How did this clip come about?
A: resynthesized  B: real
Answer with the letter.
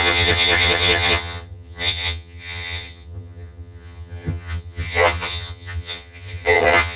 A